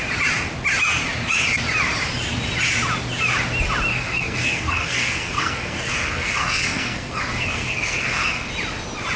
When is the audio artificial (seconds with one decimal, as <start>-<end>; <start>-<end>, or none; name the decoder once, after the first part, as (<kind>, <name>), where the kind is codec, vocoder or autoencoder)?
3.9-8.5 (codec, SNAC)